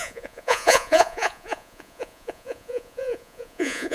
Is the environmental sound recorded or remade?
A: remade